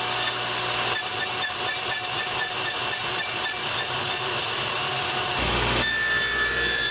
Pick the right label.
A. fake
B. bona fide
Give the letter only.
B